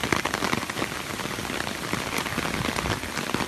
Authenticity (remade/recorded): recorded